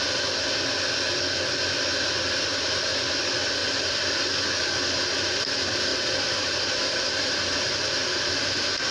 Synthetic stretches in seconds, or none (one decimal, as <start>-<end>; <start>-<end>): 3.6-4.3; 5.9-8.9